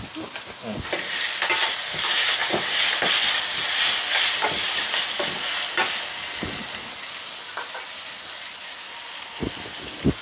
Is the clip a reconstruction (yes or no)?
no